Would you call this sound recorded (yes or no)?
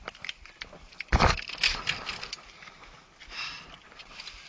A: yes